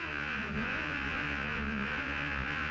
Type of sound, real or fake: fake